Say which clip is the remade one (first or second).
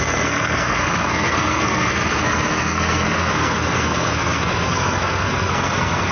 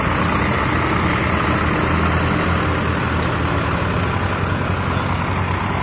first